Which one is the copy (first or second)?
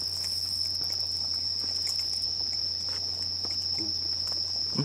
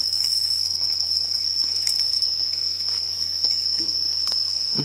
second